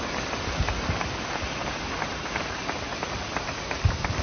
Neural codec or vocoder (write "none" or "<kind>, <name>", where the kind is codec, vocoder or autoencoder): none